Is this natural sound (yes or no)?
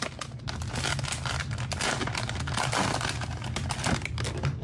yes